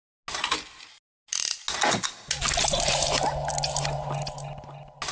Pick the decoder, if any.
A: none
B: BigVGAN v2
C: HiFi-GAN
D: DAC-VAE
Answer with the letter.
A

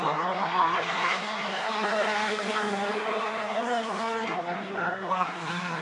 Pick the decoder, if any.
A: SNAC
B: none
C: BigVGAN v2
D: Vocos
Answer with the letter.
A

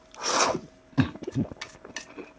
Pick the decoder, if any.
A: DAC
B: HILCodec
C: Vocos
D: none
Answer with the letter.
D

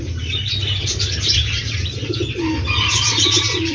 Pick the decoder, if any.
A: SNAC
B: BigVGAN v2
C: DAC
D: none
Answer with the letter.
D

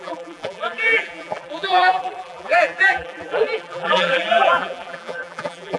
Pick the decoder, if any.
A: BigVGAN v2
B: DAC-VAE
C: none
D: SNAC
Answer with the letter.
A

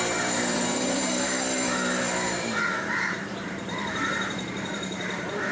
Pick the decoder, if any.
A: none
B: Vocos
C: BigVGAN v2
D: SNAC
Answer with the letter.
C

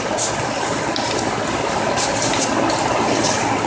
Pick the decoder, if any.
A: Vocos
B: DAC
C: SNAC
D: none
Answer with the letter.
D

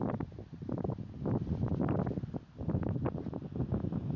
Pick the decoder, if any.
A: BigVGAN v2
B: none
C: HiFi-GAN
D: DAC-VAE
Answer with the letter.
B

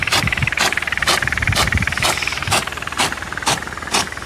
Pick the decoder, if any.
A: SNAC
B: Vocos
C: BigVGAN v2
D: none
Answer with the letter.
C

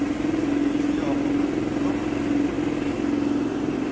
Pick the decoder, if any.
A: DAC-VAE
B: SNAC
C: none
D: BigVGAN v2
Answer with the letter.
C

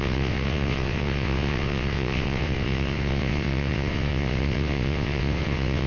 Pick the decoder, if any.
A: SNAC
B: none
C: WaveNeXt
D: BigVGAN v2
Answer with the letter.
C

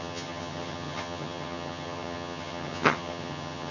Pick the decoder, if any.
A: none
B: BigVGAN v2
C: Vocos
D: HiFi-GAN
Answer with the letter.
D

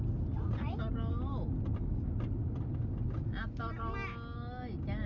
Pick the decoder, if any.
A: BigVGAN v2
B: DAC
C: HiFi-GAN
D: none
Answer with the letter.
D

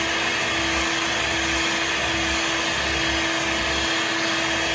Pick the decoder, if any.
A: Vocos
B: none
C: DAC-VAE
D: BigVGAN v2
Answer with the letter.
B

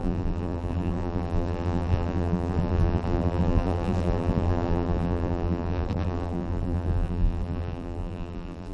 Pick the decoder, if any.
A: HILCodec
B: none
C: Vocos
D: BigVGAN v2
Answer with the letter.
D